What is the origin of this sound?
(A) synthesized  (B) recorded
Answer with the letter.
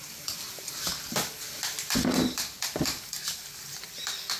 B